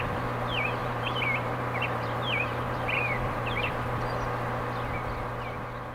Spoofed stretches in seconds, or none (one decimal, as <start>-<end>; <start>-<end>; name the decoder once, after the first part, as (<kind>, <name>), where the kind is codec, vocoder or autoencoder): 0.8-4.0 (vocoder, BigVGAN v2)